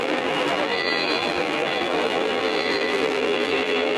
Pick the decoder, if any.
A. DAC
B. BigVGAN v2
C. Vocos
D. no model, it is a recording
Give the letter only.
B